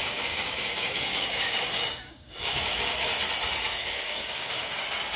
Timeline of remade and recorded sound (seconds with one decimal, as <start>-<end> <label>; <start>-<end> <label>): 0.0-3.1 remade; 3.1-3.8 recorded; 3.8-4.8 remade; 4.8-5.2 recorded